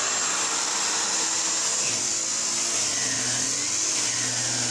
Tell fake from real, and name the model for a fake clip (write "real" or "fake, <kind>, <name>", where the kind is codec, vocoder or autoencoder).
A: real